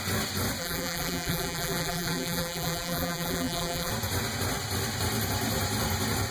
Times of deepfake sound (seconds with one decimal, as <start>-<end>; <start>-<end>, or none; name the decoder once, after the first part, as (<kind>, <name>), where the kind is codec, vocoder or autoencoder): 0.6-3.9 (vocoder, BigVGAN v2)